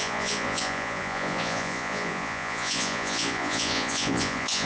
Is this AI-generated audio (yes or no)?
yes